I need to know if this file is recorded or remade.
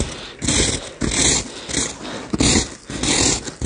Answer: recorded